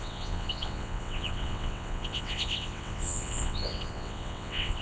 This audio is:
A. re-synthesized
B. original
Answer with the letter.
A